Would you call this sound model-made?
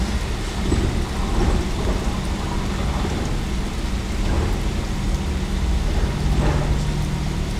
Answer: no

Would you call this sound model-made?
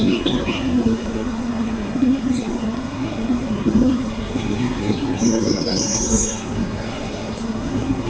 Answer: yes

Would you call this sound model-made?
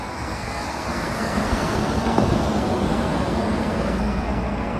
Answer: yes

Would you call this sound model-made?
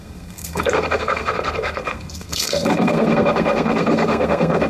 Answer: yes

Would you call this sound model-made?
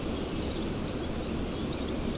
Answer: no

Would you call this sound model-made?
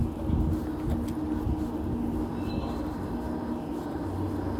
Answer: no